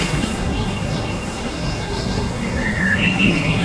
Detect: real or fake fake